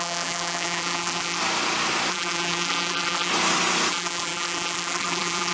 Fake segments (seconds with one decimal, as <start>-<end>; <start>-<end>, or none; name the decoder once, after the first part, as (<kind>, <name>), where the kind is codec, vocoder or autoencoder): 0.0-1.4 (vocoder, BigVGAN v2); 2.1-3.3; 3.9-5.5